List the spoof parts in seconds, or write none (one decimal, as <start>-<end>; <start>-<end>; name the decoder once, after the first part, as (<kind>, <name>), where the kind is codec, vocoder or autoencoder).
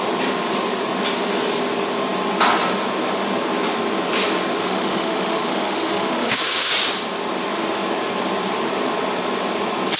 4.6-6.7 (autoencoder, DAC-VAE)